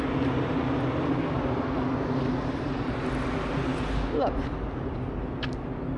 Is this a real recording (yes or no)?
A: yes